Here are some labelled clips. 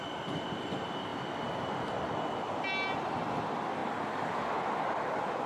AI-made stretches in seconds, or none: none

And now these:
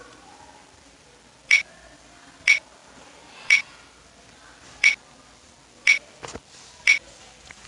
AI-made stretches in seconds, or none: none

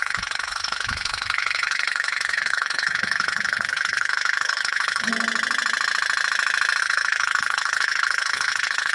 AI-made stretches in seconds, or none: 0.0-5.1 (codec, HILCodec); 6.8-8.9

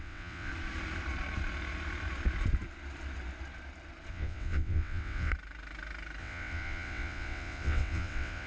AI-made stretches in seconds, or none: 0.0-0.5 (vocoder, WaveNeXt); 4.1-5.3; 6.2-8.5

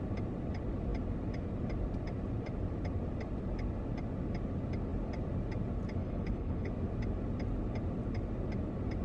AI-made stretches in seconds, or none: 6.0-6.7 (codec, HILCodec)

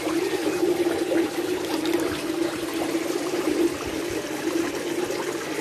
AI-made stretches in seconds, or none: 0.4-3.7 (vocoder, BigVGAN v2)